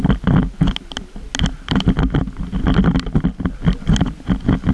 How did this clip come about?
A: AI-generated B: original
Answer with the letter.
B